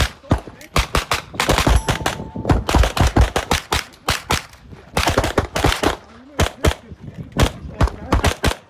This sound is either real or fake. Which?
real